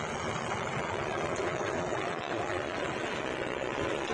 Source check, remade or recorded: remade